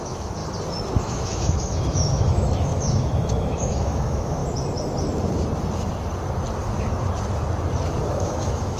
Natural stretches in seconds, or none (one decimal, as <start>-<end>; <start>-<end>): 0.4-1.0; 4.4-8.1